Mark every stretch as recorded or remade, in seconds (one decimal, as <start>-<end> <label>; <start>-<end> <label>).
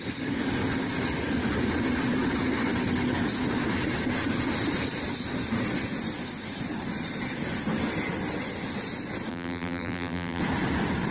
0.0-9.3 recorded; 9.3-10.4 remade; 10.4-11.1 recorded